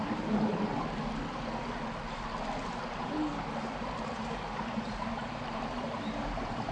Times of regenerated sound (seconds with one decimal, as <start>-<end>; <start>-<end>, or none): 0.0-0.5; 3.6-6.7